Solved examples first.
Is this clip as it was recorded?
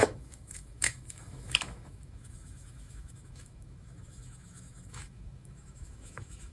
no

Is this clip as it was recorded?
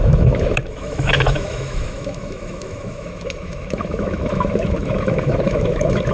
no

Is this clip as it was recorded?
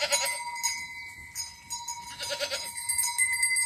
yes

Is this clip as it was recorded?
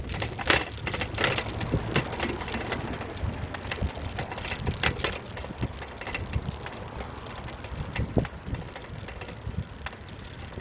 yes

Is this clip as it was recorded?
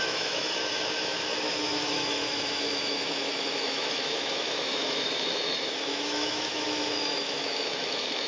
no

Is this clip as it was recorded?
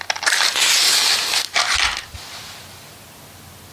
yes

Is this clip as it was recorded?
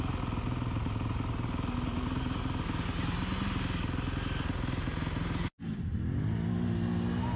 yes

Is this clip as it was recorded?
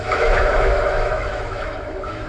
no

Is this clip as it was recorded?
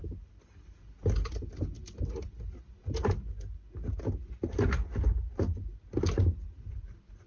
yes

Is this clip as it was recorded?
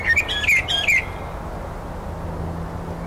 yes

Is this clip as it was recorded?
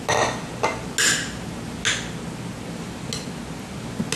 yes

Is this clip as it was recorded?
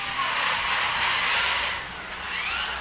yes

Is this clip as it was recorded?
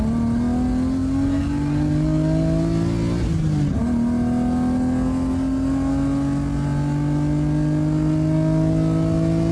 yes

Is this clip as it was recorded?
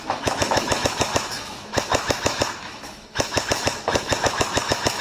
no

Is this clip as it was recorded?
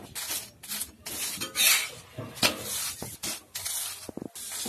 yes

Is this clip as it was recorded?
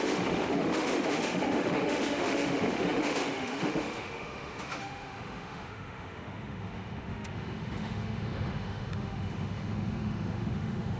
no